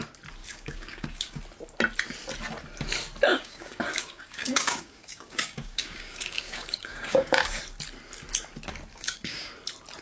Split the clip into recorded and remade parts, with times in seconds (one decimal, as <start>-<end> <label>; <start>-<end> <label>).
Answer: 0.0-0.4 recorded; 0.4-1.4 remade; 1.4-3.3 recorded; 3.3-7.6 remade; 7.6-8.9 recorded; 8.9-9.5 remade; 9.5-10.0 recorded